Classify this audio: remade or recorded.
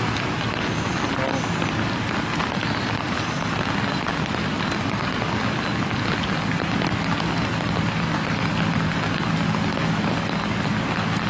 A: recorded